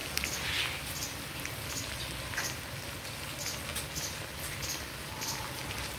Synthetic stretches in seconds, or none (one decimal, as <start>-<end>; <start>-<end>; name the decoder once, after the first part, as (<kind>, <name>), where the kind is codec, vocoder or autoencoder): none